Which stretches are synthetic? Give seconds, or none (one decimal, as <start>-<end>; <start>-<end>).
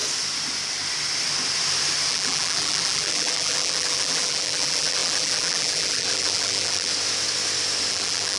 2.1-6.9; 7.9-8.4